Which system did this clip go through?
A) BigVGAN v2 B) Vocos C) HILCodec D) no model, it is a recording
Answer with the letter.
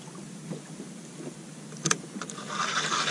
D